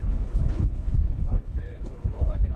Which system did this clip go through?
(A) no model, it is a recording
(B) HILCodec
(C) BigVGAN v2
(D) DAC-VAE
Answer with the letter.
B